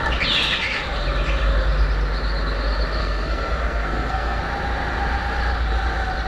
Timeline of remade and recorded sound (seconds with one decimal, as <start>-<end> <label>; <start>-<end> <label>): 0.0-3.0 recorded; 3.0-4.4 remade; 4.4-6.3 recorded